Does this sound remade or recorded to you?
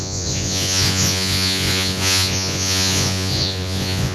remade